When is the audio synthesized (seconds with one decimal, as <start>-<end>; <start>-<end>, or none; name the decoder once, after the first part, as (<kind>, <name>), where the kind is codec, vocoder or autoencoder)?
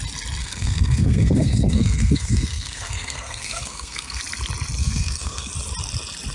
0.4-4.2 (codec, SNAC); 4.8-5.5